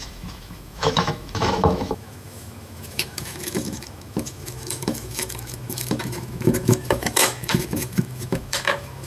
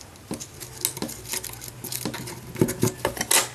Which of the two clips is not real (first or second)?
first